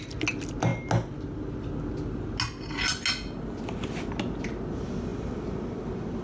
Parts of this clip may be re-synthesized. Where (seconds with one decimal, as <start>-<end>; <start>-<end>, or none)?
none